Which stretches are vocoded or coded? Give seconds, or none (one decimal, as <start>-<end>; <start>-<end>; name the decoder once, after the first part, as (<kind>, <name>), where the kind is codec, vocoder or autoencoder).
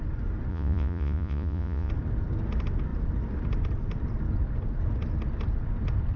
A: 0.5-1.9 (vocoder, Vocos)